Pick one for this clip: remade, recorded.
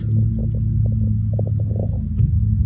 recorded